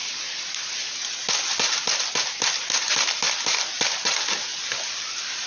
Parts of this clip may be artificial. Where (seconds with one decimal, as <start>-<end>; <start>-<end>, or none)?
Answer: none